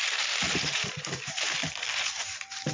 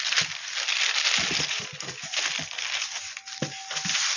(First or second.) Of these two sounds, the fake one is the first